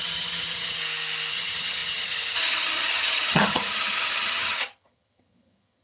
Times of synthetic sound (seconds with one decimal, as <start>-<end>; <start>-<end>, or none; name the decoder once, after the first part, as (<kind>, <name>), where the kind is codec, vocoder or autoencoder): 0.0-0.8 (vocoder, HiFi-GAN); 1.3-5.8